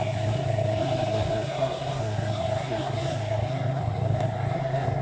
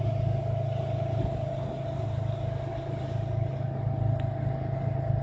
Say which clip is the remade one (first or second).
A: first